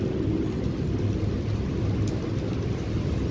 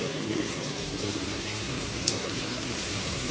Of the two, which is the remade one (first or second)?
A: second